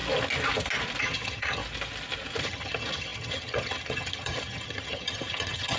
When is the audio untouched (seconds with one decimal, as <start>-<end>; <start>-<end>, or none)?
0.0-1.0; 1.6-2.4